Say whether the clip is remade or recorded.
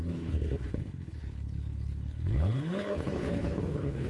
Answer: remade